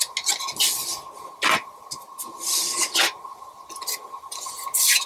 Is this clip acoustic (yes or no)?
yes